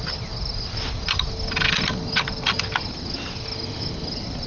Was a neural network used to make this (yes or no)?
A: no